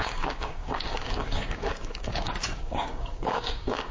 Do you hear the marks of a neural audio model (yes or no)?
yes